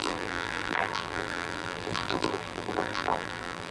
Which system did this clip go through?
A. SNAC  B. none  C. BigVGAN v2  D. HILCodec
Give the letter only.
C